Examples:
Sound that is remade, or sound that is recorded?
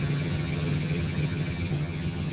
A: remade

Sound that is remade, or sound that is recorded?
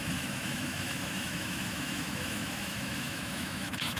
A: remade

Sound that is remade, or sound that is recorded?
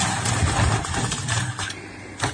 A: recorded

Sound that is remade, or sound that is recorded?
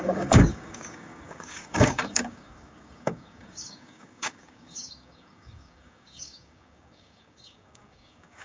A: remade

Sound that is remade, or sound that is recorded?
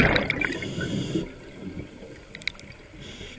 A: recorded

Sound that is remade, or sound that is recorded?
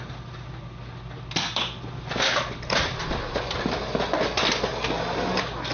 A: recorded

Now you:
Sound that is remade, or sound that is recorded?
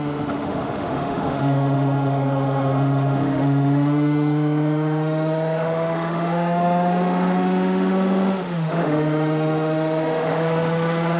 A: remade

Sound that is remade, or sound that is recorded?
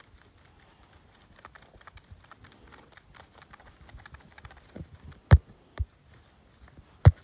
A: recorded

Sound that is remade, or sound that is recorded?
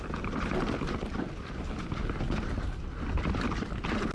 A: recorded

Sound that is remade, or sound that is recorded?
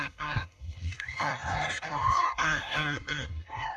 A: remade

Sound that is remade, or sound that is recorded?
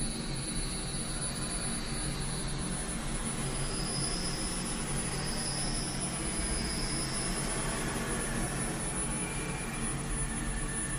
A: recorded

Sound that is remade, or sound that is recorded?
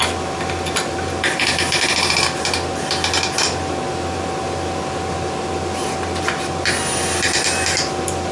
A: recorded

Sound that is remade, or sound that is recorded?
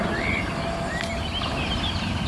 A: recorded